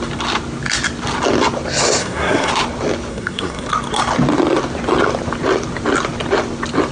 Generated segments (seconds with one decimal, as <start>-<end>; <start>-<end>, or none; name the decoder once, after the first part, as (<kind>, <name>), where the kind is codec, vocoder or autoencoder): 2.0-2.5 (codec, SNAC); 3.1-3.7